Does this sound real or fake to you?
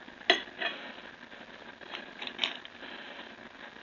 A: real